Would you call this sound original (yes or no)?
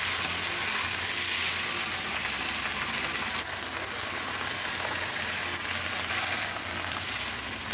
yes